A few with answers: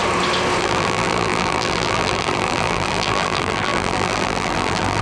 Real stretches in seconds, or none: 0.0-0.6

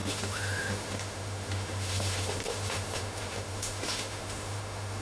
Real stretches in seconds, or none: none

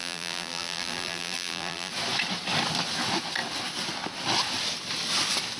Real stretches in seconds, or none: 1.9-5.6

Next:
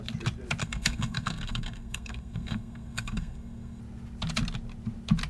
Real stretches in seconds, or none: 0.0-0.6; 3.8-5.3

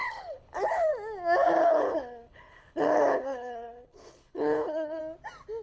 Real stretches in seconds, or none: 0.9-1.6; 5.0-5.6